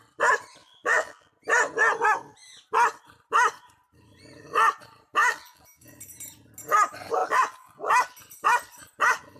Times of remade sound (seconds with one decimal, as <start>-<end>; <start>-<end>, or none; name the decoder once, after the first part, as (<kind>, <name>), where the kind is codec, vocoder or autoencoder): 0.6-1.3 (vocoder, BigVGAN v2); 5.2-5.8; 7.2-7.9